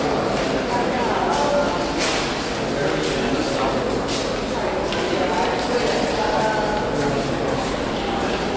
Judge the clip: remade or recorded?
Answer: recorded